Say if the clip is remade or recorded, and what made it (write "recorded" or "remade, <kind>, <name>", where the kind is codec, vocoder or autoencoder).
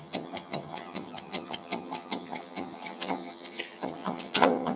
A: remade, vocoder, HiFi-GAN